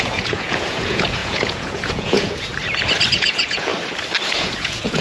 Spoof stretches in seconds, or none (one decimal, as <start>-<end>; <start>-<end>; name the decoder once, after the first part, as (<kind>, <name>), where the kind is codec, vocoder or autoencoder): 0.0-2.5 (vocoder, Vocos); 3.1-3.7; 4.4-5.0

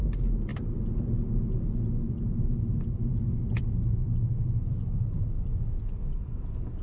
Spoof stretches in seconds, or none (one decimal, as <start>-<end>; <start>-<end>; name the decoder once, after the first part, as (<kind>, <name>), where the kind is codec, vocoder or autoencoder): none

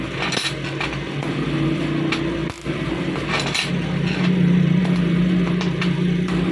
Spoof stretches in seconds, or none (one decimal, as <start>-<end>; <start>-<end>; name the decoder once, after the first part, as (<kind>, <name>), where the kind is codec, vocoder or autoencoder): none